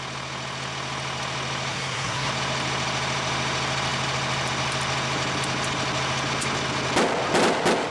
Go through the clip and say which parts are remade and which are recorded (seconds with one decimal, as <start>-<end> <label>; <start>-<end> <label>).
0.0-1.7 recorded; 1.7-2.3 remade; 2.3-7.9 recorded